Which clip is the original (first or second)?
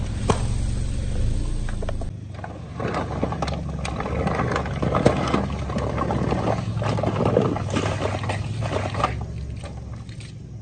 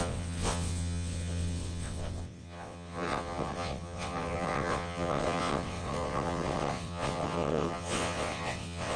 first